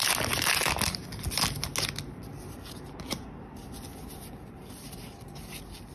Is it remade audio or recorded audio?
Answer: recorded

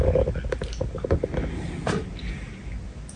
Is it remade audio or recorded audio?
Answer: recorded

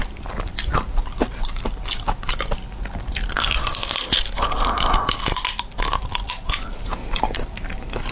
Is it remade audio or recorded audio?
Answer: recorded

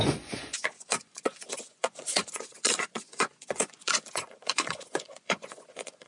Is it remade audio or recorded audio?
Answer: remade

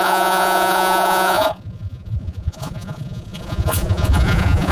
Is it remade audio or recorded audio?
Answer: remade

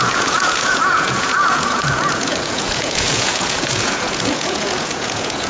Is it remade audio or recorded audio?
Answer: remade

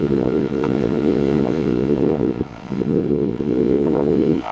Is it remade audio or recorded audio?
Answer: remade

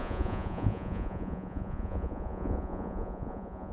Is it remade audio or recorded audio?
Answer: remade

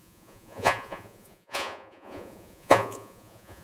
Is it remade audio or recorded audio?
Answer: remade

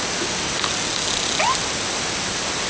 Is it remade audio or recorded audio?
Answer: recorded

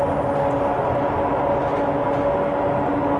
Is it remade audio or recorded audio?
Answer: recorded